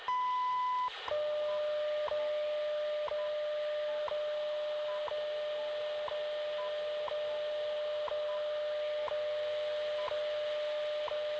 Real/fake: real